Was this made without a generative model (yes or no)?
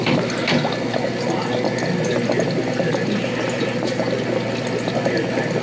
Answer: yes